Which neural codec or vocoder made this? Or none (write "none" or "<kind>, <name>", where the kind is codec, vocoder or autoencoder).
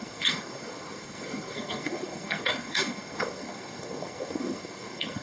codec, SNAC